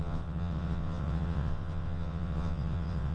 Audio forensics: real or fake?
fake